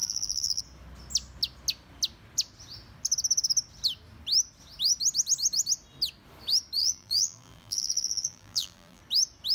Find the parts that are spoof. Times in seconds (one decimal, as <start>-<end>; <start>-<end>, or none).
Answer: 0.0-0.6; 6.8-9.0